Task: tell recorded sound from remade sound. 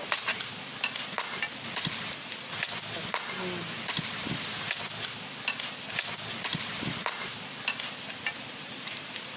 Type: recorded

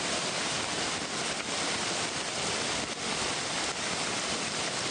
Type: recorded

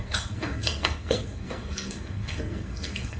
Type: remade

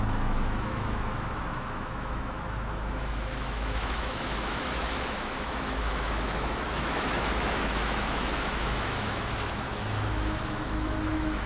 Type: remade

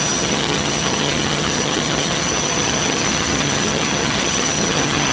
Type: remade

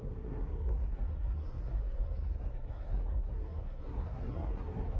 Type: remade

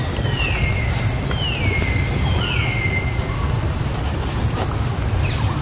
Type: recorded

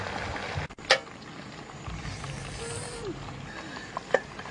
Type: recorded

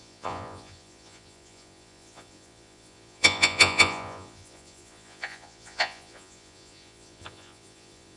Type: remade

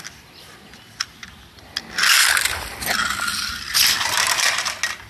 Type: recorded